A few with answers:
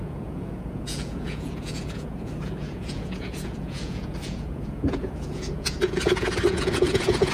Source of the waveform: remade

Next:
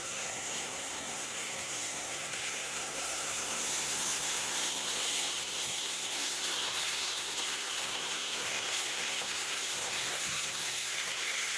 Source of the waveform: remade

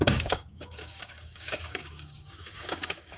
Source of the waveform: remade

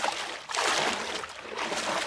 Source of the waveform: recorded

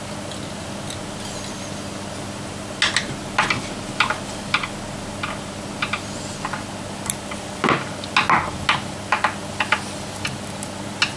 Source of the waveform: recorded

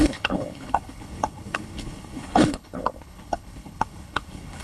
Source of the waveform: remade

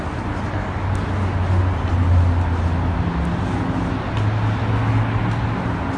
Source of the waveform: recorded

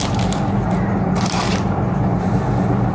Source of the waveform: recorded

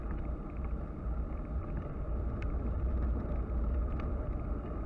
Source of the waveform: remade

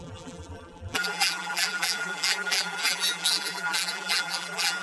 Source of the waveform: remade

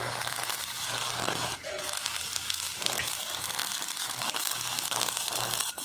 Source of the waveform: remade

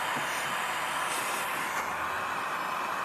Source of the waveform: recorded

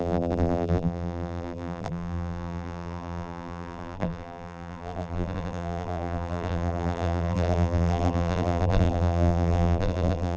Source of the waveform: remade